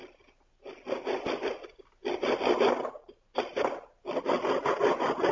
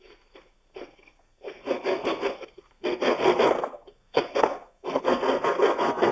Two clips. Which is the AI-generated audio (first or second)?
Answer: second